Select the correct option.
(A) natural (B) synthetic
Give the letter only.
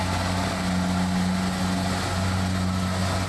A